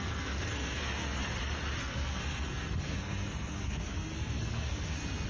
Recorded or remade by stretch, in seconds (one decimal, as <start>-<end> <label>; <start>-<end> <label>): 0.0-1.2 remade; 1.2-1.8 recorded; 1.8-5.3 remade